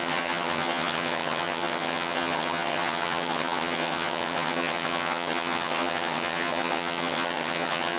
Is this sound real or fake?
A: fake